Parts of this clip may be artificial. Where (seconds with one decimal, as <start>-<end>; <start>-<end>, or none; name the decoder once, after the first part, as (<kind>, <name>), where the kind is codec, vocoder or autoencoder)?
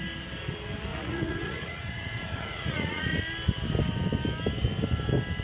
0.9-3.2 (vocoder, Vocos)